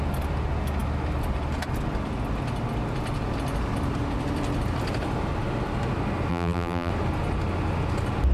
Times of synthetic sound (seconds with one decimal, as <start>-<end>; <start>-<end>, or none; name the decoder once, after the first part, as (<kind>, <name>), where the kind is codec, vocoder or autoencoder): 6.3-6.9 (vocoder, BigVGAN v2)